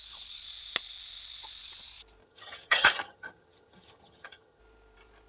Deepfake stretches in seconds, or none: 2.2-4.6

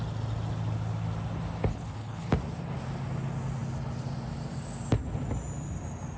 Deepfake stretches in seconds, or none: 1.7-2.3

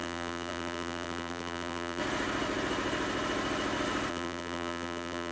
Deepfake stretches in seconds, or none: 0.0-2.0; 4.1-5.3

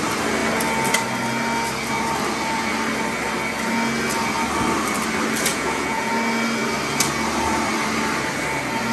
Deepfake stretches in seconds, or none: 5.5-6.1

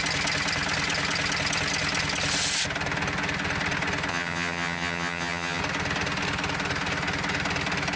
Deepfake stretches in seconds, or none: 4.1-5.6

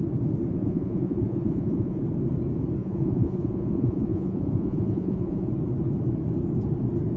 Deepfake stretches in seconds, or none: 0.6-2.0; 2.8-5.5